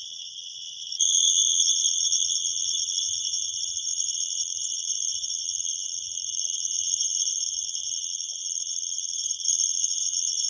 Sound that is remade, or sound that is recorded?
remade